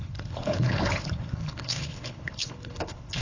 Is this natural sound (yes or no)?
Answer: no